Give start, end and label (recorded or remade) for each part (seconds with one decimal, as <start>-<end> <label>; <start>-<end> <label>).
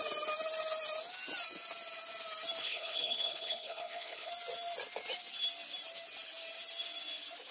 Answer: 0.0-2.6 recorded; 2.6-4.3 remade; 4.3-7.5 recorded